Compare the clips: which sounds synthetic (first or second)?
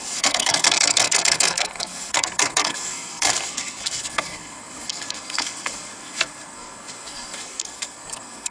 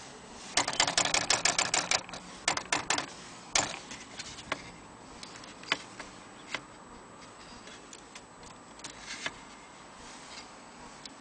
first